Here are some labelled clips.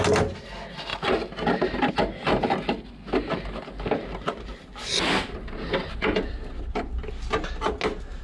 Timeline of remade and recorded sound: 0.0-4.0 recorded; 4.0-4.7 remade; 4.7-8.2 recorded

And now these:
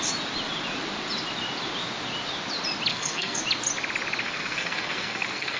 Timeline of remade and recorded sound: 0.0-2.9 recorded; 2.9-3.4 remade; 3.4-4.2 recorded; 4.2-5.6 remade

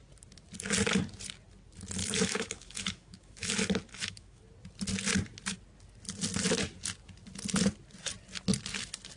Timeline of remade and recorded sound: 0.0-2.0 recorded; 2.0-3.5 remade; 3.5-3.9 recorded; 3.9-4.4 remade; 4.4-9.2 recorded